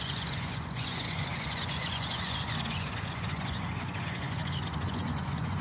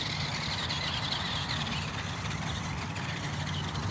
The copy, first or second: first